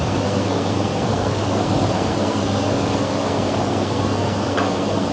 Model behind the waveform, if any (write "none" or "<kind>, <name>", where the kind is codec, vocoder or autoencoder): codec, SNAC